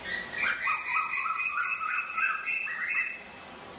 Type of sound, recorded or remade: recorded